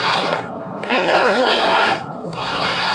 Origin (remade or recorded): remade